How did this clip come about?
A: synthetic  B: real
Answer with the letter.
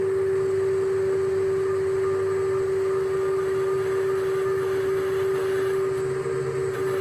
B